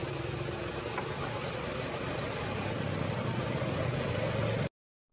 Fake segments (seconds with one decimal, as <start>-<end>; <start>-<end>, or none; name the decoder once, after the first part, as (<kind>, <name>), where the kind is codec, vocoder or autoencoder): none